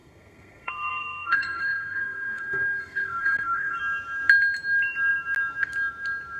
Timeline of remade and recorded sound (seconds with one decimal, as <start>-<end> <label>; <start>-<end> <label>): 0.0-3.8 remade; 3.8-6.4 recorded